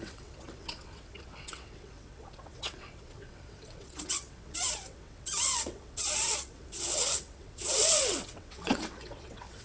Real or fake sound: fake